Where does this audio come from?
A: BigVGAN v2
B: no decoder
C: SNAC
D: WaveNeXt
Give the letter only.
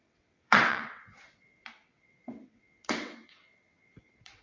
D